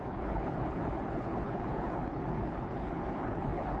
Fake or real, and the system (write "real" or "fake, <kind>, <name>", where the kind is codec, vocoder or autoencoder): fake, codec, HILCodec